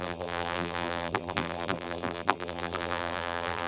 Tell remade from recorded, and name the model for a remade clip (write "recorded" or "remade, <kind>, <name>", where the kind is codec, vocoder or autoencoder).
remade, vocoder, BigVGAN v2